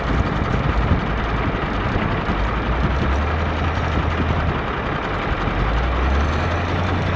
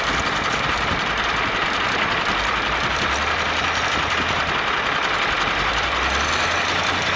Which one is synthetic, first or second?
second